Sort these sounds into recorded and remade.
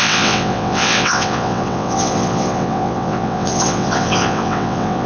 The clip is remade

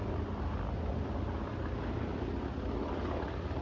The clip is recorded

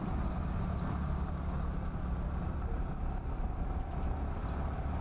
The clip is recorded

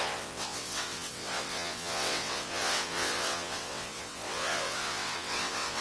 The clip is remade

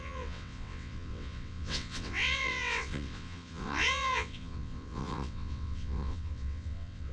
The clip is remade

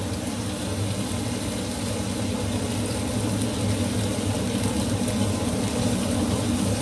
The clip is recorded